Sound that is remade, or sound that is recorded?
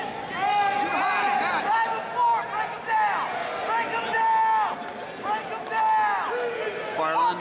recorded